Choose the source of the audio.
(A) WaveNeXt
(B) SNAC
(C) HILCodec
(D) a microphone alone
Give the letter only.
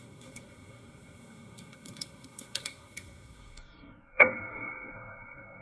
B